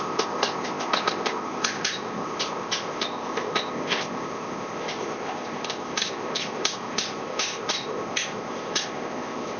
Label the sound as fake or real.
fake